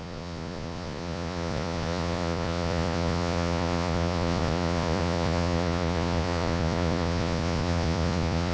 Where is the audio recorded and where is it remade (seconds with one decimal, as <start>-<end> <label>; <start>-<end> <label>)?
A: 0.0-8.5 remade